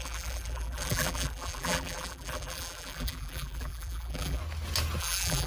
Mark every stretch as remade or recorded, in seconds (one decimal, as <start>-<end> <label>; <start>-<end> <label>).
0.0-4.4 remade; 4.4-5.0 recorded; 5.0-5.5 remade